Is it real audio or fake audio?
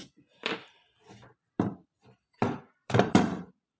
fake